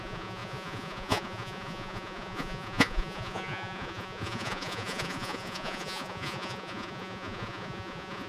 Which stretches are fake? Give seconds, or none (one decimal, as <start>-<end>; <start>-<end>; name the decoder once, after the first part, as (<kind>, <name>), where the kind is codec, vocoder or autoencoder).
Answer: 0.0-8.3 (vocoder, Vocos)